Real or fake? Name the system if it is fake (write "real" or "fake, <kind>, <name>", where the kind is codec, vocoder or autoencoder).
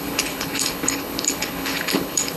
fake, codec, HILCodec